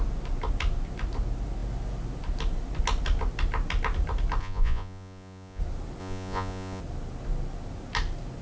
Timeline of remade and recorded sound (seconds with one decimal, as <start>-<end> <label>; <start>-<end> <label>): 0.0-4.4 recorded; 4.4-5.6 remade; 5.6-6.0 recorded; 6.0-6.8 remade; 6.8-8.4 recorded